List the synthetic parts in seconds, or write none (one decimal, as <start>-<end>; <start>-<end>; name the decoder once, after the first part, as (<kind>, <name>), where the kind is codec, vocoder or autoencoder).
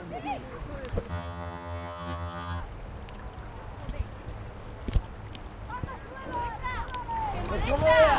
1.1-2.6 (vocoder, HiFi-GAN)